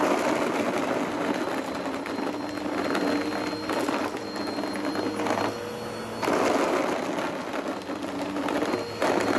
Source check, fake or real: real